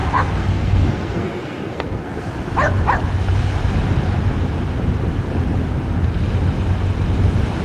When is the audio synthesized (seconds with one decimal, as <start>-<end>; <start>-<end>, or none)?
0.0-2.3